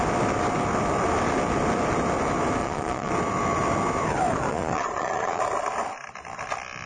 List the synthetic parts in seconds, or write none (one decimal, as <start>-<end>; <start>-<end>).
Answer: 2.6-3.1; 4.5-5.4